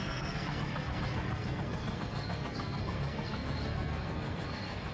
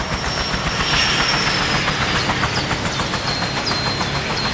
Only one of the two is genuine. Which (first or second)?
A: second